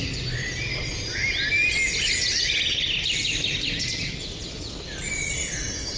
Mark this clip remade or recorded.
recorded